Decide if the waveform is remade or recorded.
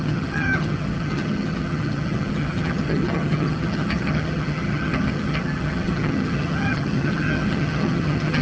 remade